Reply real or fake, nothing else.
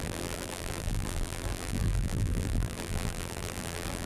fake